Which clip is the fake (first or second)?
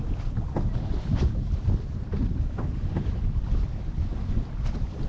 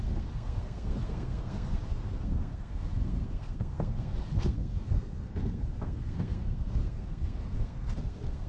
second